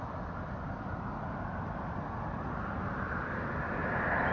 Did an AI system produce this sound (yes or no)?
no